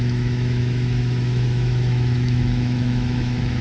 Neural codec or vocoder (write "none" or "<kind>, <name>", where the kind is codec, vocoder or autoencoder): autoencoder, DAC-VAE